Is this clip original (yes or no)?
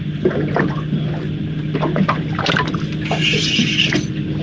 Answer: yes